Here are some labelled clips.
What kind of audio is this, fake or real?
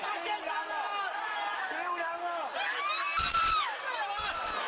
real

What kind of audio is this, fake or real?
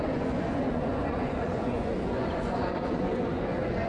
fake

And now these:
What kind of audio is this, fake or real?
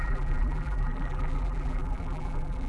fake